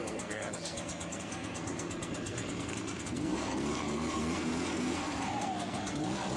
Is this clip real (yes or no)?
no